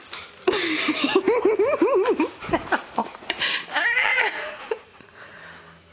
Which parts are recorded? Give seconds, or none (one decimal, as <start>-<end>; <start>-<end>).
0.0-3.0; 3.5-4.1; 5.4-5.9